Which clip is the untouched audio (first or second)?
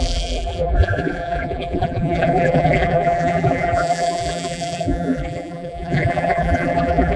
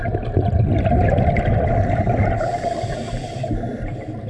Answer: second